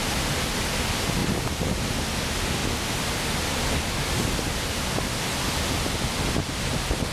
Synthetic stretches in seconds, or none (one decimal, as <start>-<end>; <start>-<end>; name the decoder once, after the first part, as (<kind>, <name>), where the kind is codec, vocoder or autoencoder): 0.0-0.6 (vocoder, BigVGAN v2); 1.2-1.9